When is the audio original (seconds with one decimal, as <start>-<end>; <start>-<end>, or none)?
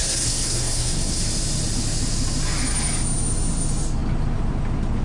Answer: 1.2-5.0